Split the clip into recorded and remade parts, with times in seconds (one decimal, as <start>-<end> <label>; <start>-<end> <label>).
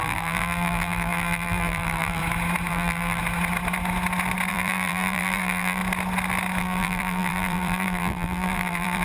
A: 0.0-2.2 remade; 2.2-2.7 recorded; 2.7-3.2 remade; 3.2-4.5 recorded; 4.5-5.8 remade; 5.8-6.6 recorded; 6.6-9.0 remade